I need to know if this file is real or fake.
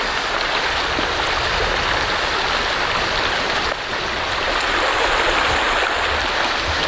real